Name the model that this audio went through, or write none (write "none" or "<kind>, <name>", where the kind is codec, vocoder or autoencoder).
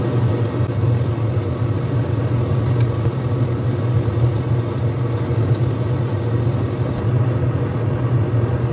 none